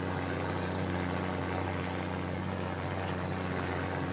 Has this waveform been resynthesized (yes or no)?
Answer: no